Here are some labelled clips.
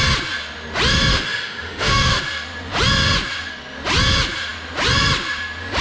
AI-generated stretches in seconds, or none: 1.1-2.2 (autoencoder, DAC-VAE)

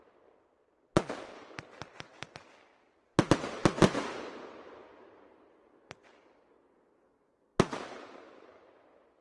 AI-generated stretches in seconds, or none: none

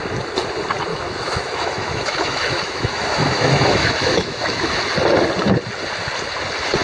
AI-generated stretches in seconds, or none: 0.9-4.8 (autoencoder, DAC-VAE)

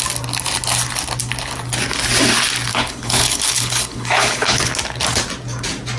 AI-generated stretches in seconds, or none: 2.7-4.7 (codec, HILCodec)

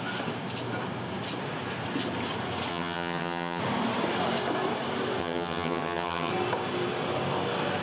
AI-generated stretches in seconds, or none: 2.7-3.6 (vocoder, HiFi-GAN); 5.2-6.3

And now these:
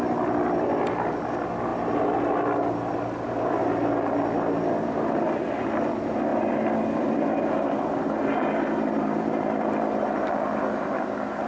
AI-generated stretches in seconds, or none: 6.3-10.0 (vocoder, BigVGAN v2)

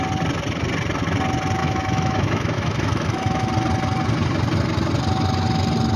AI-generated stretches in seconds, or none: 1.6-3.5 (autoencoder, DAC-VAE)